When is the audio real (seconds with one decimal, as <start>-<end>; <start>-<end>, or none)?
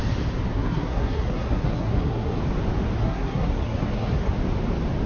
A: 0.0-0.5; 2.4-3.0; 4.3-5.1